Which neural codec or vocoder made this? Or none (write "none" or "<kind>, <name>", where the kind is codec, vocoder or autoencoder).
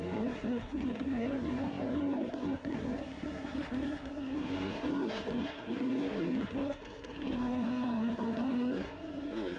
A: codec, SNAC